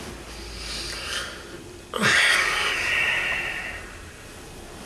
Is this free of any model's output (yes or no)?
yes